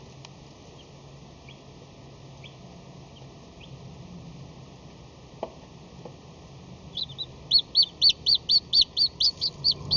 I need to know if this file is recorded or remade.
recorded